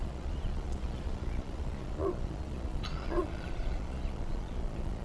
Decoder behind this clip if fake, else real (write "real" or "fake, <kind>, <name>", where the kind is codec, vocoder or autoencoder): fake, vocoder, Vocos